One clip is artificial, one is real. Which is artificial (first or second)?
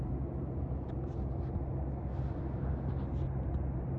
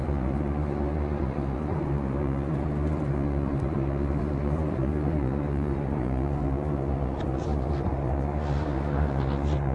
second